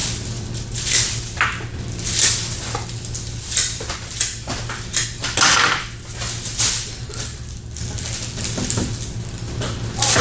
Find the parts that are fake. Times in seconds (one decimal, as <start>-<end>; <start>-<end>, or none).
none